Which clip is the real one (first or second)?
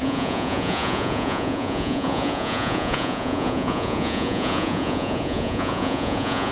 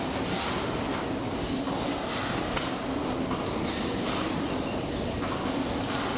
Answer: second